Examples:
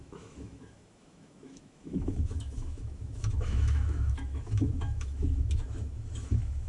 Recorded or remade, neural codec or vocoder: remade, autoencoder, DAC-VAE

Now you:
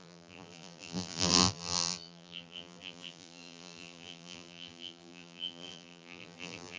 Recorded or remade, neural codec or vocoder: remade, vocoder, BigVGAN v2